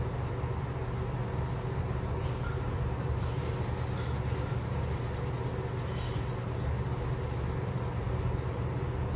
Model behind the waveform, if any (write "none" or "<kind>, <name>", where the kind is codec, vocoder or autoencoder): none